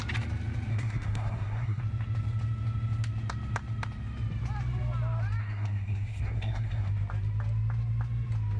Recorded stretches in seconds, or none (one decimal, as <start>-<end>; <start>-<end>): 0.0-0.7; 1.8-5.4; 6.9-8.6